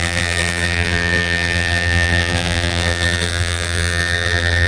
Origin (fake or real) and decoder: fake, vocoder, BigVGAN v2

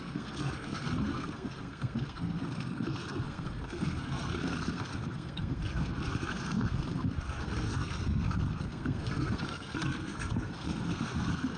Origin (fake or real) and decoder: fake, codec, SNAC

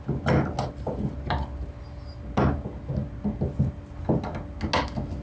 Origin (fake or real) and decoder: real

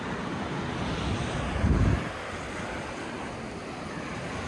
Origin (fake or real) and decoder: real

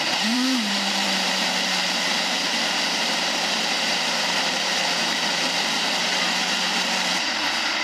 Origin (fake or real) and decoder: fake, vocoder, BigVGAN v2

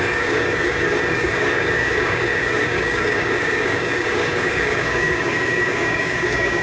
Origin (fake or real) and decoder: fake, codec, DAC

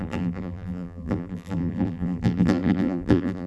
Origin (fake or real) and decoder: fake, vocoder, BigVGAN v2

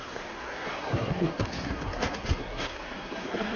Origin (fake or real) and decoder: fake, codec, SNAC